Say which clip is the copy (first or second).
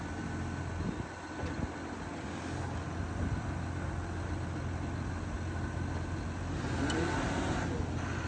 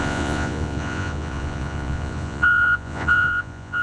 second